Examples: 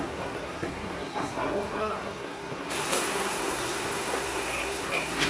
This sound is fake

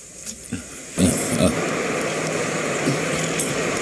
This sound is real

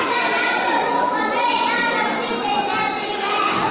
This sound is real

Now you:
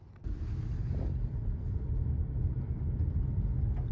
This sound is real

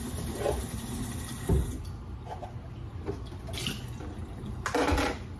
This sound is real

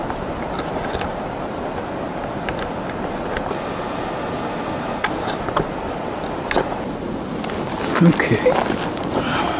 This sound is real